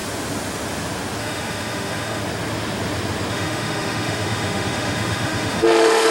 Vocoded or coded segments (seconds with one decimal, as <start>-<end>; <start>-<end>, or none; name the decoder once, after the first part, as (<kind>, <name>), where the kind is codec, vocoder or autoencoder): 1.2-2.2 (autoencoder, DAC-VAE); 3.3-6.1